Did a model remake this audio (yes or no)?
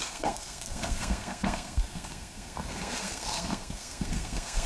yes